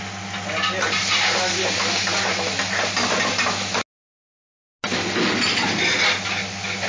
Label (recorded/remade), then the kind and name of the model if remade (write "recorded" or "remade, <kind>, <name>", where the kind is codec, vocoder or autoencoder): recorded